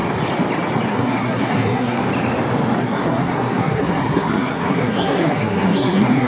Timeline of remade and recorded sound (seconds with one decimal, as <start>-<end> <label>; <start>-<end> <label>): 0.0-0.9 recorded; 0.9-2.0 remade; 2.0-2.8 recorded; 2.8-6.3 remade